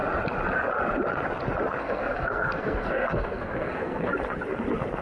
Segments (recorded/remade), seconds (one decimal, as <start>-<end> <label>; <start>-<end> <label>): 0.0-1.8 recorded; 1.8-4.1 remade; 4.1-5.0 recorded